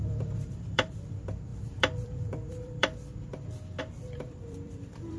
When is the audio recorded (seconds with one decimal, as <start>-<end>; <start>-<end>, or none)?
none